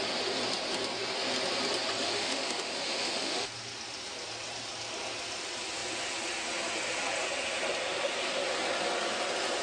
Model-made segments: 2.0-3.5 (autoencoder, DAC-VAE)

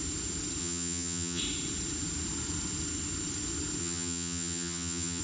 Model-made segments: 0.6-1.4 (vocoder, HiFi-GAN); 3.8-5.2